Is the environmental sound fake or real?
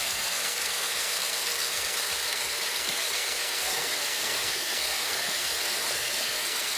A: fake